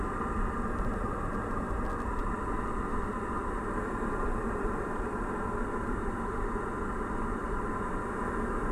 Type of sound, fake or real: fake